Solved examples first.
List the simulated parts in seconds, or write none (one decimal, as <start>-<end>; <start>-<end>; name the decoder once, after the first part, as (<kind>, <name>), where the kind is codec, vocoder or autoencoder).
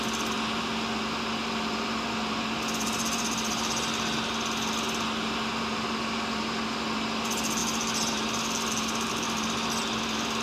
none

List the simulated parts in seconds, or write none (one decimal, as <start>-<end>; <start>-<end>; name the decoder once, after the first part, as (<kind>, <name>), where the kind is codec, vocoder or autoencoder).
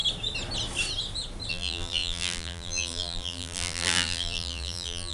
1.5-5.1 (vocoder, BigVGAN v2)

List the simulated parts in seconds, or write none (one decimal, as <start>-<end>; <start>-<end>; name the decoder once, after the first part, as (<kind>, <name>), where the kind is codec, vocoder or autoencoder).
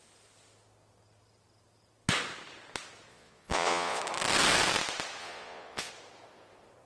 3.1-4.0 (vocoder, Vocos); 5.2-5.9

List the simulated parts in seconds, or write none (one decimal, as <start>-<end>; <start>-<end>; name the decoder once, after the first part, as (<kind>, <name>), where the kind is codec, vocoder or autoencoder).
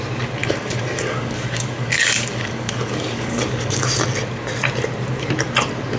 0.4-3.9 (codec, DAC)